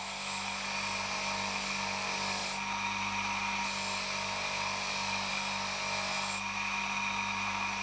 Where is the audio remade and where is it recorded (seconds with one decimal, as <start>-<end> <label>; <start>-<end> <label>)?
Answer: 0.0-7.8 recorded

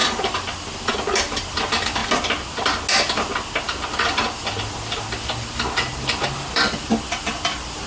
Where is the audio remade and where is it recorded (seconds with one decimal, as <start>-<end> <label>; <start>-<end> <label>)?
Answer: 0.0-2.0 remade; 2.0-4.2 recorded; 4.2-7.9 remade

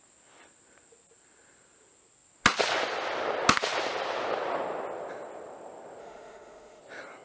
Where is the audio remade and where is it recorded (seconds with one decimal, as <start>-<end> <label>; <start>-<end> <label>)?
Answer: 0.0-6.0 recorded; 6.0-6.8 remade; 6.8-7.2 recorded

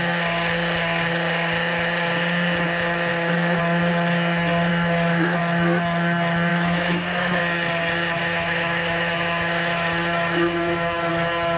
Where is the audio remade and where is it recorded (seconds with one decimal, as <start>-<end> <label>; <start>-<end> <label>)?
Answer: 0.0-3.1 recorded; 3.1-3.6 remade; 3.6-4.7 recorded; 4.7-5.4 remade; 5.4-6.5 recorded; 6.5-7.4 remade; 7.4-8.2 recorded; 8.2-11.1 remade; 11.1-11.6 recorded

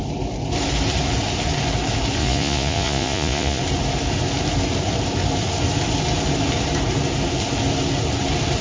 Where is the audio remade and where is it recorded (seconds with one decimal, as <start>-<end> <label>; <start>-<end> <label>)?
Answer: 0.0-2.2 recorded; 2.2-3.6 remade; 3.6-8.6 recorded

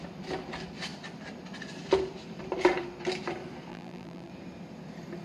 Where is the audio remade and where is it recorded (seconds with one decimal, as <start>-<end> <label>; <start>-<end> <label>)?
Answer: 0.0-3.7 recorded; 3.7-4.3 remade; 4.3-5.2 recorded

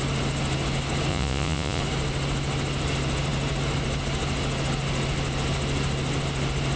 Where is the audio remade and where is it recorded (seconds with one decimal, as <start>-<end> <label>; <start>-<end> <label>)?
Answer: 0.0-1.1 recorded; 1.1-1.8 remade; 1.8-6.8 recorded